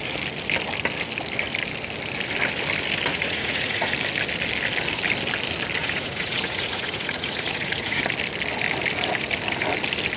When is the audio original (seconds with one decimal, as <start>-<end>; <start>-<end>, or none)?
0.0-3.1; 3.9-5.8; 8.0-10.2

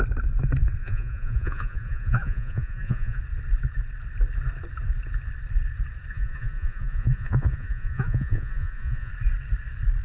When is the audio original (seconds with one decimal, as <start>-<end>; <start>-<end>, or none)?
0.0-0.8; 3.2-6.1; 9.1-10.0